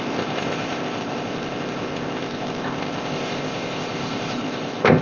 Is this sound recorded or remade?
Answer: remade